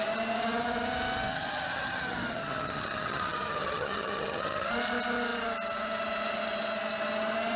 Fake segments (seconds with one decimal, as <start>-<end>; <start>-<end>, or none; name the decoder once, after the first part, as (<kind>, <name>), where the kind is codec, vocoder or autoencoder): 1.3-4.7 (vocoder, HiFi-GAN)